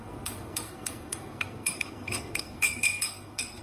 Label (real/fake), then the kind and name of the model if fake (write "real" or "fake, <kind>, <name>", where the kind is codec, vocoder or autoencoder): fake, codec, SNAC